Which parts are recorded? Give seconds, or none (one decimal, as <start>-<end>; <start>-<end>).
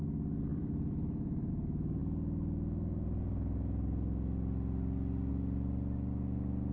0.0-0.5; 1.5-6.7